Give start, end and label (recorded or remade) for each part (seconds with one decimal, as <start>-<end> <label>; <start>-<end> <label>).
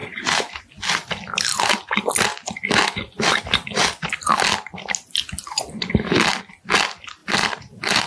0.0-0.6 remade; 0.6-7.2 recorded; 7.2-8.1 remade